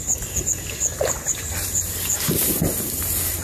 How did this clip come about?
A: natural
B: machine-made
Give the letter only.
A